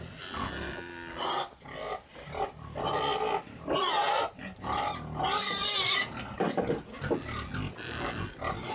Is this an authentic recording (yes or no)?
yes